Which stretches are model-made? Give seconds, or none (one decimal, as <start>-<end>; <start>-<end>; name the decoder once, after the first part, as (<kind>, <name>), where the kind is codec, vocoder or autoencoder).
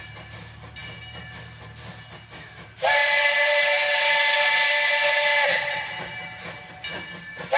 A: none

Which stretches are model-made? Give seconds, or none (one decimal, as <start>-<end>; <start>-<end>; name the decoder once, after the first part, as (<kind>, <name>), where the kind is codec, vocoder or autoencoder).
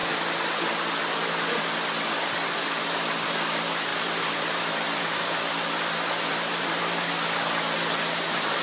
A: 3.9-5.5 (vocoder, BigVGAN v2); 6.3-7.1